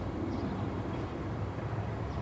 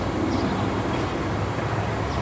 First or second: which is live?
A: second